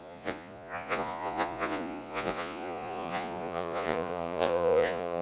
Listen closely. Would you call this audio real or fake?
fake